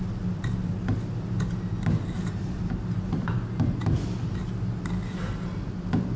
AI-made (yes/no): no